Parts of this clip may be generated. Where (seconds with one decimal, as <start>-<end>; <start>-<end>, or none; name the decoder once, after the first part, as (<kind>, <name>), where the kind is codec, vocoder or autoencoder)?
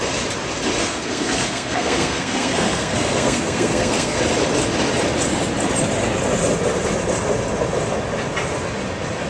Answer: 0.8-4.2 (codec, SNAC)